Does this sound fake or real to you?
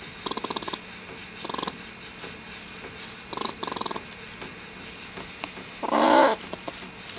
real